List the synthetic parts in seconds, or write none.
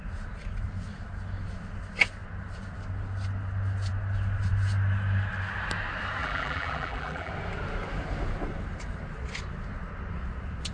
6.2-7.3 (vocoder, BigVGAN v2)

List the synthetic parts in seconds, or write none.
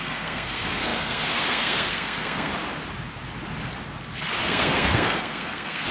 0.0-2.5 (codec, SNAC); 4.4-5.9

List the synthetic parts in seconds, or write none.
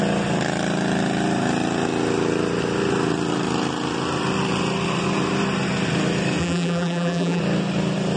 6.4-7.4 (vocoder, BigVGAN v2)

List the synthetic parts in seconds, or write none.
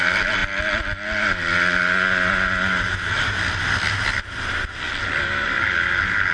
none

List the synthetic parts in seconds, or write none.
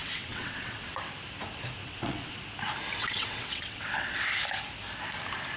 0.0-0.9 (vocoder, WaveNeXt); 1.8-2.4; 3.0-4.2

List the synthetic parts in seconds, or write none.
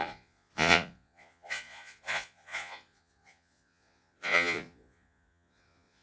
0.0-6.0 (vocoder, Vocos)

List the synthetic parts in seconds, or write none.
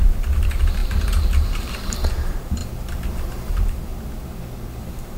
0.0-2.6 (vocoder, BigVGAN v2); 3.5-3.9; 4.8-5.2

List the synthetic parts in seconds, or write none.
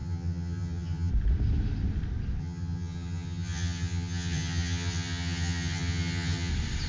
0.0-1.1 (vocoder, HiFi-GAN); 2.4-6.5